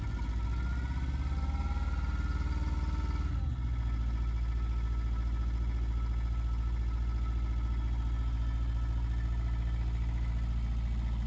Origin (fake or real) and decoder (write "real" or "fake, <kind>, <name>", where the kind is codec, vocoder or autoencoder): real